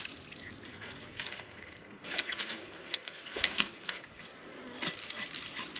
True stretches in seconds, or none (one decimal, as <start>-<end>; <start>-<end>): 0.0-0.7; 4.2-5.8